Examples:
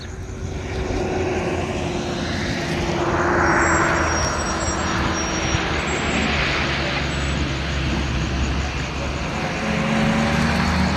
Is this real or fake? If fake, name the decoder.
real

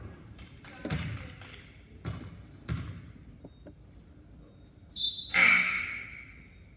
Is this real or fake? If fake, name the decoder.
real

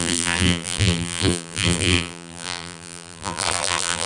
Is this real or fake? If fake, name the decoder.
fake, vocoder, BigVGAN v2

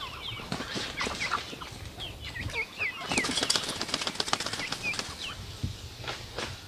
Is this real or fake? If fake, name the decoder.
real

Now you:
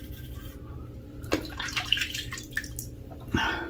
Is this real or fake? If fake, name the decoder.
fake, vocoder, BigVGAN v2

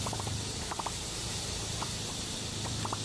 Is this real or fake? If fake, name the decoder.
fake, vocoder, BigVGAN v2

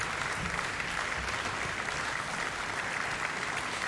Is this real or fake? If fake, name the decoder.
fake, vocoder, BigVGAN v2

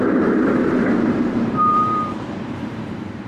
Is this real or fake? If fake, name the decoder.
fake, vocoder, BigVGAN v2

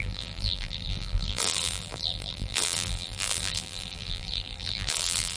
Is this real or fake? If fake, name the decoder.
fake, vocoder, BigVGAN v2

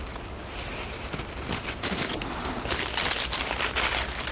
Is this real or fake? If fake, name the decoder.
real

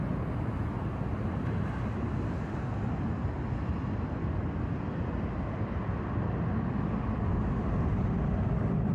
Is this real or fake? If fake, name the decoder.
real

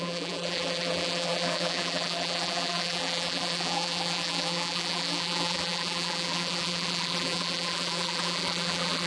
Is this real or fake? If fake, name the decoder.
fake, vocoder, BigVGAN v2